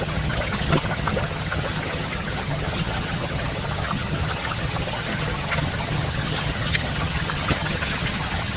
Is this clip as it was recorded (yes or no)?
no